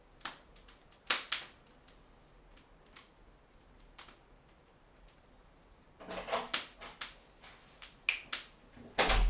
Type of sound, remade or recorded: recorded